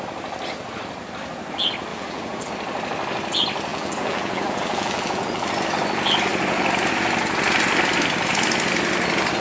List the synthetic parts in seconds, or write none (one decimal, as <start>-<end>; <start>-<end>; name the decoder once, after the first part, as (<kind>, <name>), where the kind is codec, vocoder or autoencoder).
1.9-2.5 (vocoder, BigVGAN v2); 3.7-5.5